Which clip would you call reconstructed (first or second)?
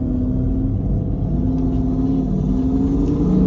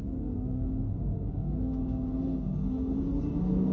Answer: second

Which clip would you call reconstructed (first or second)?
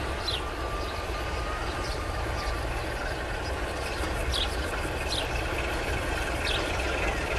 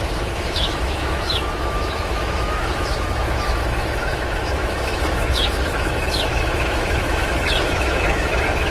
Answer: second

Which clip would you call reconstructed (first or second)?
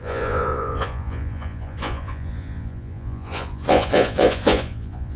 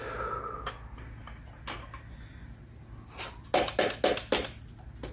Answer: first